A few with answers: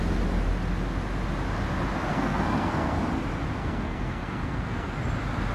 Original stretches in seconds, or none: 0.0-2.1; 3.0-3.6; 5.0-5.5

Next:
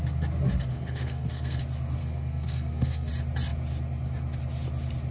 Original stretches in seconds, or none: 0.0-0.7; 1.6-2.0; 3.1-5.1

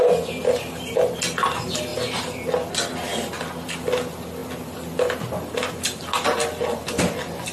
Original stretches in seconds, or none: 0.0-7.5

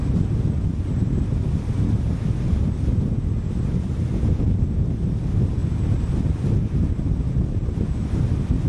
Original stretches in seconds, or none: 0.0-8.7